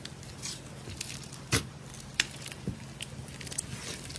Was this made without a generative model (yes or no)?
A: yes